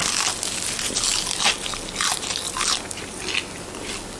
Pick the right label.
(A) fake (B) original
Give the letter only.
B